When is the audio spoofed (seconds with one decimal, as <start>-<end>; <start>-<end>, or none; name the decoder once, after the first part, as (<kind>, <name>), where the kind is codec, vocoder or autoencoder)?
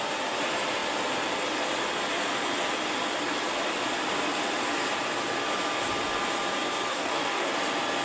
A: 6.9-7.6 (codec, DAC)